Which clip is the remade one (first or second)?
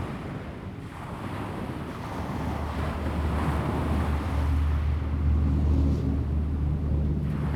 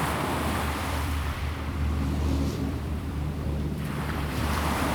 second